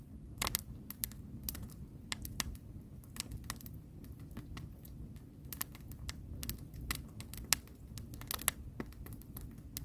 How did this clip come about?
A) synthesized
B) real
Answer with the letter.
B